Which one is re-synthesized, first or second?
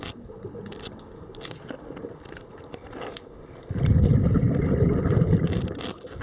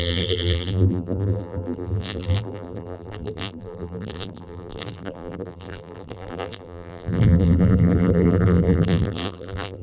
second